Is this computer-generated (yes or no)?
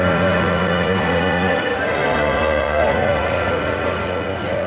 yes